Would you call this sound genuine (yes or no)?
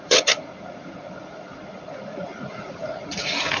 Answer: no